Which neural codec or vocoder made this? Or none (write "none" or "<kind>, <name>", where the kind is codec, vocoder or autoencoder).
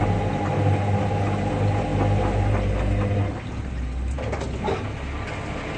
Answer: none